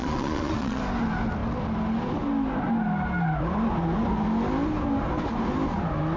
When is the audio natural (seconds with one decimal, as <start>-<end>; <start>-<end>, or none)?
0.8-6.2